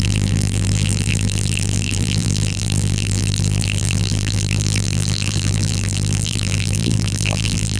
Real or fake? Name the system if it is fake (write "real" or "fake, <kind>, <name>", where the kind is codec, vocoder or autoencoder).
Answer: fake, vocoder, BigVGAN v2